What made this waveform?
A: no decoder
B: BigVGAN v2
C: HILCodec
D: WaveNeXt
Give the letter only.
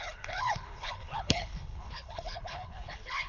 C